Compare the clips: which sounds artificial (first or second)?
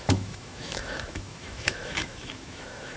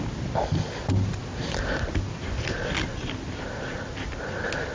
first